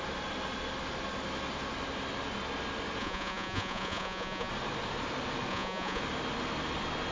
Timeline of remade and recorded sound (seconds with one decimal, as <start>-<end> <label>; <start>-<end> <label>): 0.0-3.0 recorded; 3.0-4.5 remade; 4.5-5.5 recorded; 5.5-6.0 remade; 6.0-7.1 recorded